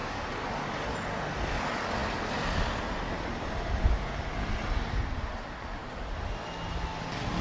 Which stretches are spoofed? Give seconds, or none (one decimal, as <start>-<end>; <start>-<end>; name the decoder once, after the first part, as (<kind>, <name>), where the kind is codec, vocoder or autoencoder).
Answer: none